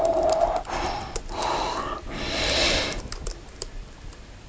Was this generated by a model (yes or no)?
no